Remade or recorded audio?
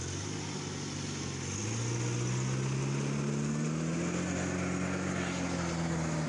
recorded